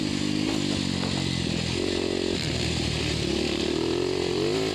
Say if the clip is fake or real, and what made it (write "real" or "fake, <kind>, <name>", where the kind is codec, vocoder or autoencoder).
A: real